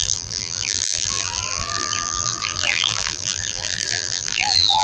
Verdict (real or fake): fake